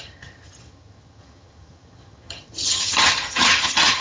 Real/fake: fake